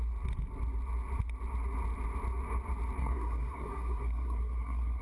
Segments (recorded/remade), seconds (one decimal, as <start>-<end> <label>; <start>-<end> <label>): 0.0-3.0 recorded; 3.0-5.0 remade